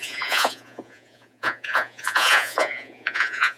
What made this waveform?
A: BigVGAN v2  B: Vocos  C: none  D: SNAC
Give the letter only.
B